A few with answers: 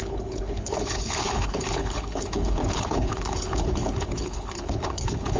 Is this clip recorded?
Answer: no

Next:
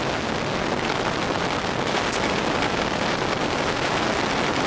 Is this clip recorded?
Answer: yes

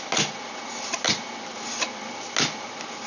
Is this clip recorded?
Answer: yes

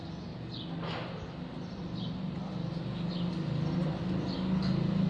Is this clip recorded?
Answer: yes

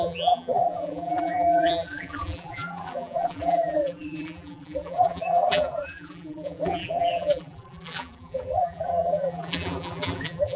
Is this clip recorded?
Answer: no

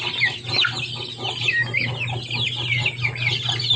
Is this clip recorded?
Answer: yes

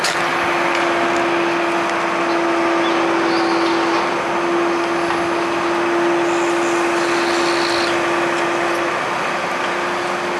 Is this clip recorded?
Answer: yes